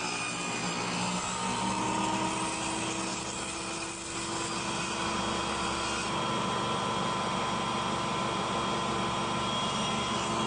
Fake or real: real